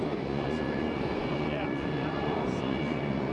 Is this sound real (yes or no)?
no